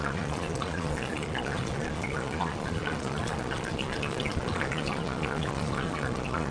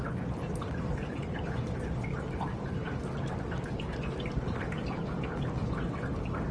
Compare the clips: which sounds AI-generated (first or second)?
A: first